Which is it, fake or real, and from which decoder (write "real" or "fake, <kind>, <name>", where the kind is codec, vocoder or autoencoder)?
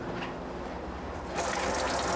real